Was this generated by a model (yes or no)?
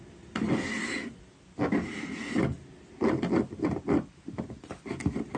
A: no